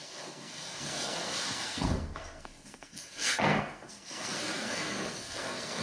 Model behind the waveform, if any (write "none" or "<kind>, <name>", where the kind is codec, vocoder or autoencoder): codec, SNAC